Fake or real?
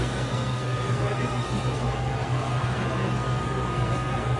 fake